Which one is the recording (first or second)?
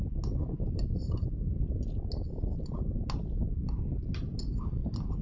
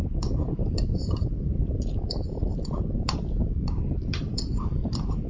first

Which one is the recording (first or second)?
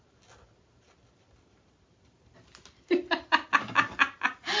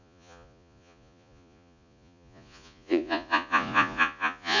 first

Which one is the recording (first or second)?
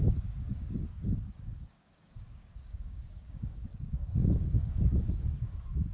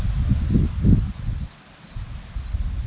second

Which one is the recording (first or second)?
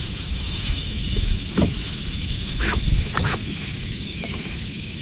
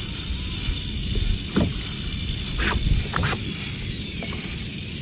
second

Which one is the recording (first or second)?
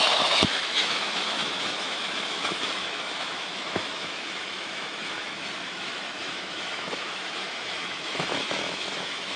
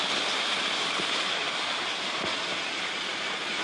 second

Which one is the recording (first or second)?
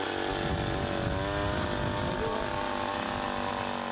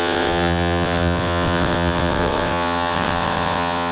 first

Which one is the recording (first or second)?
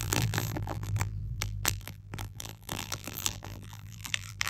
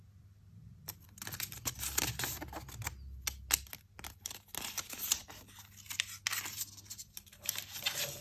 second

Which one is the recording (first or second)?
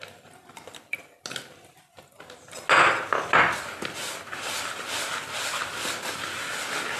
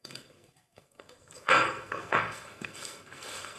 first